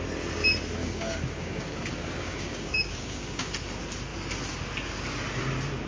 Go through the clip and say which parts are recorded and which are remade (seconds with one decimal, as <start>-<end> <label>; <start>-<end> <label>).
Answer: 0.0-0.8 recorded; 0.8-3.5 remade; 3.5-5.9 recorded